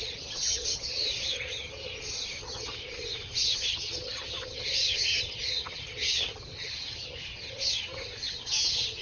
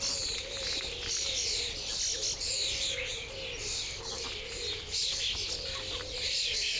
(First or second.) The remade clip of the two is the first